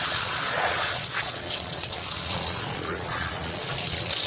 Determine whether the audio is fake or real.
fake